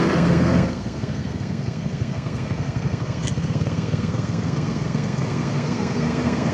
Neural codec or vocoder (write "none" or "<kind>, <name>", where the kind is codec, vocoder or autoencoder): codec, SNAC